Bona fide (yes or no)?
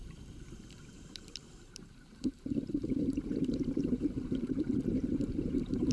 no